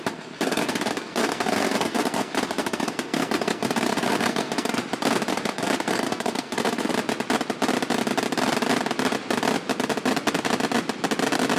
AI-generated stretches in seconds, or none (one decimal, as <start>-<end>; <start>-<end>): 0.0-4.8; 5.3-6.9